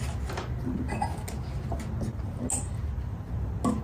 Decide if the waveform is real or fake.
real